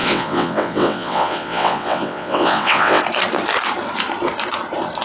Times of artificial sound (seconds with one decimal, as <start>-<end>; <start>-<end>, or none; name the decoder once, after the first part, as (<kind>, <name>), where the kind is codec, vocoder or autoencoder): 0.0-3.0 (vocoder, WaveNeXt)